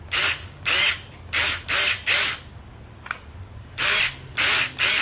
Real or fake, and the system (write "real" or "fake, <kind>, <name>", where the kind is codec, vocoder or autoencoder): real